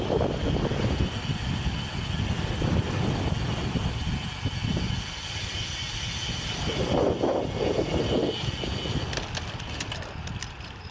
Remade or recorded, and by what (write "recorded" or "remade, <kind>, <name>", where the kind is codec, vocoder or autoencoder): recorded